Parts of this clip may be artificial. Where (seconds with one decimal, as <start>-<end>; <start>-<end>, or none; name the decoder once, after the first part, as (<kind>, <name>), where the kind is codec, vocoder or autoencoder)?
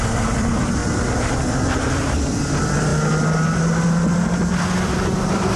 0.0-0.8 (vocoder, BigVGAN v2); 1.9-2.9; 5.1-5.6